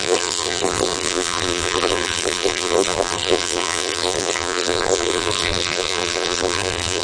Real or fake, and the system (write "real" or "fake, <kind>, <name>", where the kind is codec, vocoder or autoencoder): fake, vocoder, BigVGAN v2